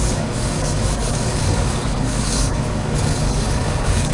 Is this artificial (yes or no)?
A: yes